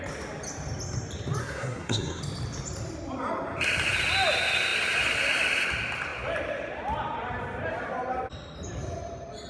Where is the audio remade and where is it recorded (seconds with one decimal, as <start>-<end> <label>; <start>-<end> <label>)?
0.0-1.4 recorded; 1.4-2.2 remade; 2.2-9.5 recorded